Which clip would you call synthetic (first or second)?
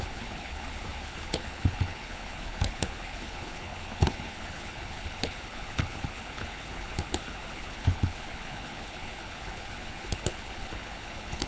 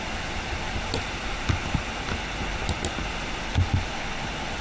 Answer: first